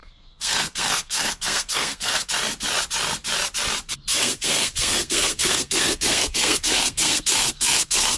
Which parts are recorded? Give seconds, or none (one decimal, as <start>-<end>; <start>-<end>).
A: 2.3-4.2